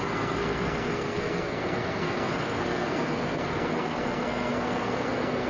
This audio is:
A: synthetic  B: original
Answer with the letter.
A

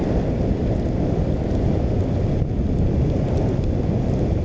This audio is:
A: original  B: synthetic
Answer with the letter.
A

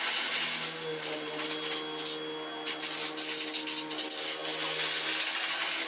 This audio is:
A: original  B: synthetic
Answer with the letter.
A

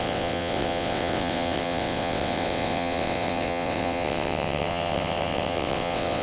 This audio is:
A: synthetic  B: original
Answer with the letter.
A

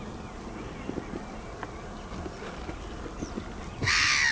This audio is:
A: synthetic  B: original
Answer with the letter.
B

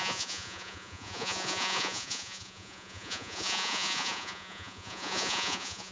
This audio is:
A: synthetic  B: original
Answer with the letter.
A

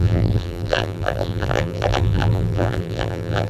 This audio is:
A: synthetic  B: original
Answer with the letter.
A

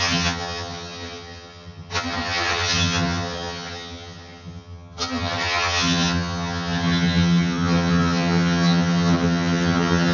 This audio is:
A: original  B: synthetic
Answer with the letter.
B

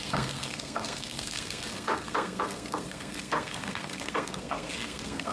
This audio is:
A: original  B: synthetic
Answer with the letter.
B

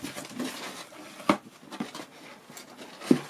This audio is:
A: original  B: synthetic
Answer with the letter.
A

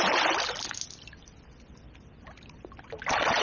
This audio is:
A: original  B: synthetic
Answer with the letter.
A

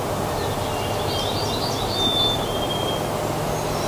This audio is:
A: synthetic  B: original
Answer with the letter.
B